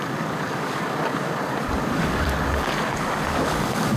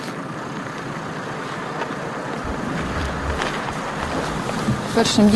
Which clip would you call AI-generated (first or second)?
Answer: first